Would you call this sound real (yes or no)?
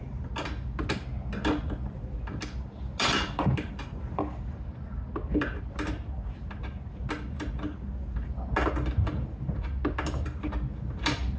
yes